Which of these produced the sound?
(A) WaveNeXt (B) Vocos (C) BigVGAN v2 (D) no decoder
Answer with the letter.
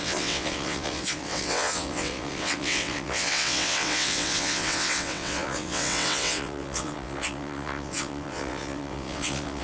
A